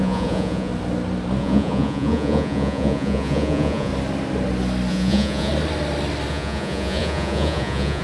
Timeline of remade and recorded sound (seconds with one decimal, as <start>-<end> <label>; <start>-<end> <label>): 0.0-0.7 remade; 0.7-1.4 recorded; 1.4-3.9 remade; 3.9-4.9 recorded; 4.9-5.5 remade; 5.5-6.3 recorded; 6.3-8.0 remade